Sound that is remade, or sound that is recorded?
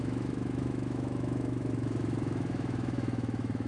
remade